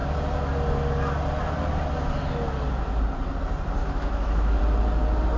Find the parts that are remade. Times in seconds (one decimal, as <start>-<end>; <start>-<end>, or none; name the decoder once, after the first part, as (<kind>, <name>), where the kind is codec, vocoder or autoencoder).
3.8-4.6 (autoencoder, DAC-VAE)